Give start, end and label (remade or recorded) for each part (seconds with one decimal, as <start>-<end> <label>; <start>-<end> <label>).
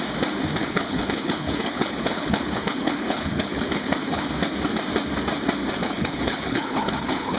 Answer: 0.0-0.6 recorded; 0.6-4.2 remade; 4.2-5.8 recorded; 5.8-7.4 remade